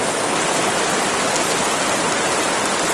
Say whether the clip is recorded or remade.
recorded